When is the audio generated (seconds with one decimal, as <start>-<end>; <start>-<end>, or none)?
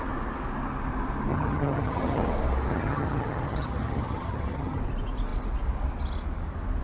1.3-2.3; 2.7-4.8